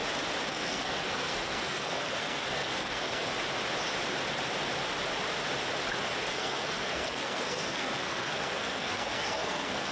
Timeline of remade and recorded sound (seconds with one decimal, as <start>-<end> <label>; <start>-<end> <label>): 0.0-0.5 recorded; 0.5-3.3 remade; 3.3-6.3 recorded; 6.3-9.9 remade